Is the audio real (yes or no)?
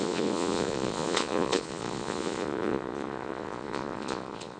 no